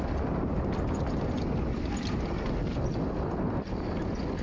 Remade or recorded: recorded